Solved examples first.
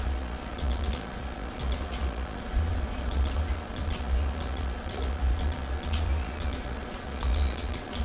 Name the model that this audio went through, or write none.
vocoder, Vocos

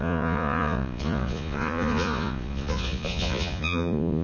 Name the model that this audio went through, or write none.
vocoder, Vocos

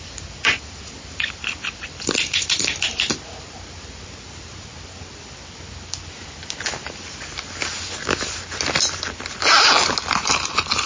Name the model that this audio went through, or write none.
none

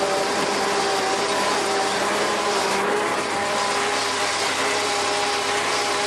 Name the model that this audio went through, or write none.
none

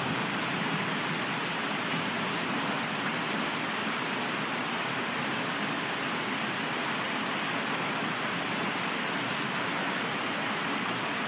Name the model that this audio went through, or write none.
none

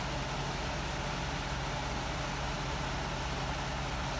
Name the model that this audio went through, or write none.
none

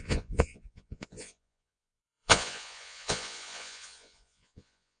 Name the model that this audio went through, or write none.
vocoder, Vocos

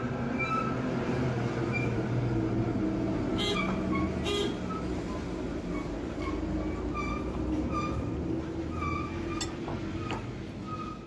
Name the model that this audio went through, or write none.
none